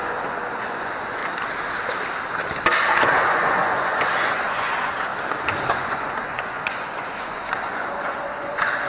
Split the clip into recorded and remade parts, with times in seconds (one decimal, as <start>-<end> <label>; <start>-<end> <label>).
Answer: 0.0-1.2 remade; 1.2-2.8 recorded; 2.8-5.1 remade; 5.1-5.7 recorded; 5.7-8.9 remade